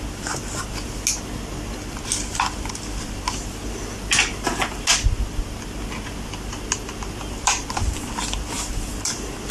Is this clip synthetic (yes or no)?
no